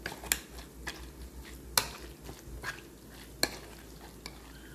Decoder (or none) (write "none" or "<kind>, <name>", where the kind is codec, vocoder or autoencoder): none